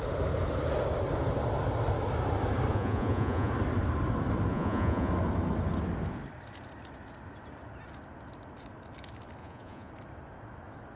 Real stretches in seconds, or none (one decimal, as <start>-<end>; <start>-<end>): 0.0-2.7; 3.5-4.5; 5.1-9.4; 9.9-11.0

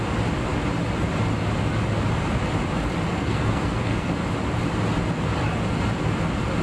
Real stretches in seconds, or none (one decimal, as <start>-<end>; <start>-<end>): 0.0-3.1; 4.1-6.6

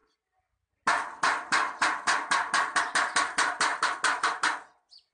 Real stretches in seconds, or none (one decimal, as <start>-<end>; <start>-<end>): 0.0-5.1

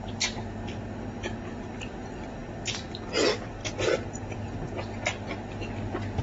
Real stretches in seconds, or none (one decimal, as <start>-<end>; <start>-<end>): 0.0-6.2

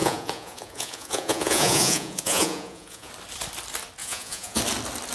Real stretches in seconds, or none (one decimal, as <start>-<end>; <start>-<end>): 3.1-4.0; 4.6-5.1

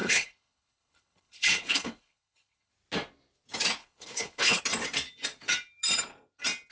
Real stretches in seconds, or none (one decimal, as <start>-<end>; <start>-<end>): 2.7-3.8; 4.6-6.7

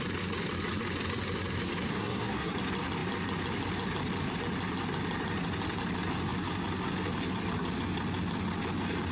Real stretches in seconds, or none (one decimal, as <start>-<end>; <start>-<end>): 0.0-1.9; 2.5-9.1

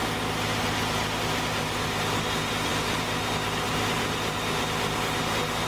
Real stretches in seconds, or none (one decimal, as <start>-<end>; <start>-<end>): 0.0-5.7